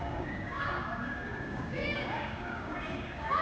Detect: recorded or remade remade